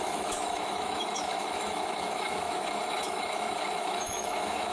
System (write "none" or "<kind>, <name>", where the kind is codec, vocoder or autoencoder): autoencoder, DAC-VAE